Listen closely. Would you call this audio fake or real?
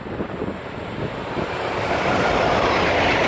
real